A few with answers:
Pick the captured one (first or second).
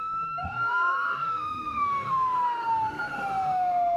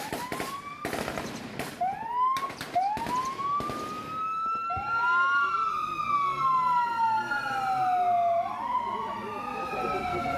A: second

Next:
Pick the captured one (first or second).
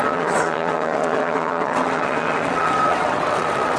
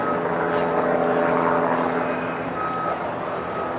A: second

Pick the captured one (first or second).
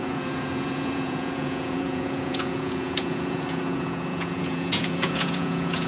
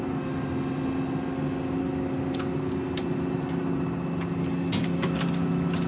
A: second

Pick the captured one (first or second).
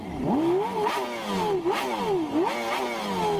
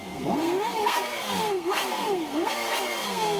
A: first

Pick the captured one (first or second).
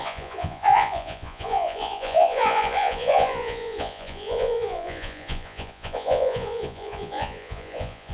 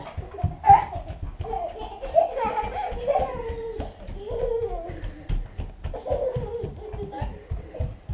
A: second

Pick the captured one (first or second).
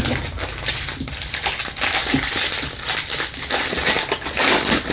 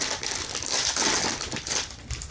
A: first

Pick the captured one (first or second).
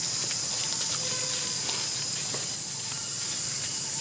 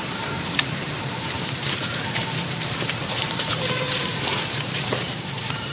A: first